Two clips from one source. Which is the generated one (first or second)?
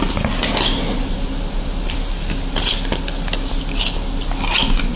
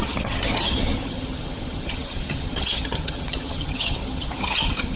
second